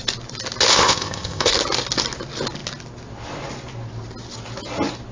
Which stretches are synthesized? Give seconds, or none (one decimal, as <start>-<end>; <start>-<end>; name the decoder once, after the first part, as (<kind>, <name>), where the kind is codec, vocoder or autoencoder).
0.7-1.5 (codec, ZipCodec)